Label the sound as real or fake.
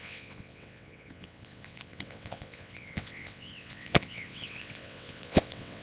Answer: fake